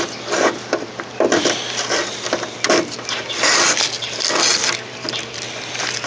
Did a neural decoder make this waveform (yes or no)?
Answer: no